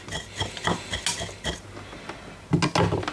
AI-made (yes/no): no